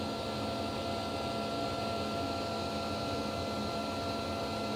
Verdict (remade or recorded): recorded